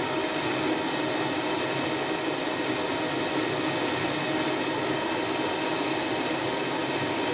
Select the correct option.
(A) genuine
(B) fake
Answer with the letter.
A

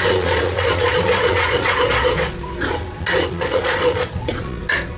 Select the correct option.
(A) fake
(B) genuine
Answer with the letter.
A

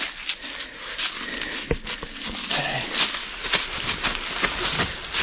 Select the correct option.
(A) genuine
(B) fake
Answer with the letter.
A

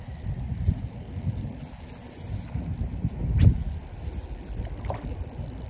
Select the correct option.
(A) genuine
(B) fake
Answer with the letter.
A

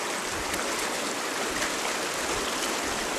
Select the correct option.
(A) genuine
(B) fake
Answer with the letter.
A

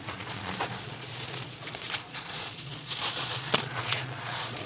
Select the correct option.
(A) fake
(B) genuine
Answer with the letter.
A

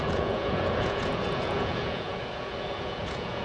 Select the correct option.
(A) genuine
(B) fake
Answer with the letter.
B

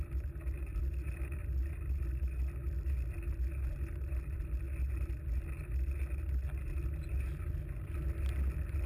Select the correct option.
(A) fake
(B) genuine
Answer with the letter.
B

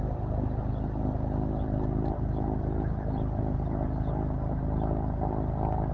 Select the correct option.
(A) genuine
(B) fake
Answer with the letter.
A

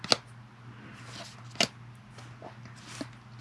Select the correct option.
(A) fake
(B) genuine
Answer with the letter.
B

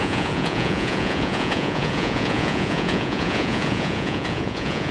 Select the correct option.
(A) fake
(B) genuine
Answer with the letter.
A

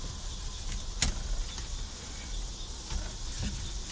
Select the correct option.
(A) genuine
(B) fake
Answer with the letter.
A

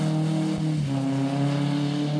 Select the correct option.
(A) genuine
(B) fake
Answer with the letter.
A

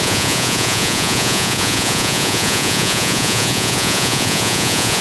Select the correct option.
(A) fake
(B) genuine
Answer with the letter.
A